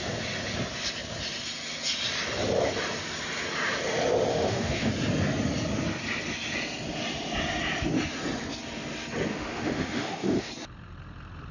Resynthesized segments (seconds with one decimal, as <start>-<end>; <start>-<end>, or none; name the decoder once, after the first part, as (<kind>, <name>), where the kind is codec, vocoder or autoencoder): 4.3-4.9 (autoencoder, DAC-VAE); 9.3-10.5